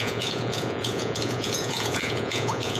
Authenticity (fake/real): fake